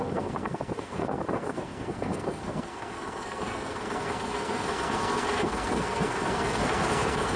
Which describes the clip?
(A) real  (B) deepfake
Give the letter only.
B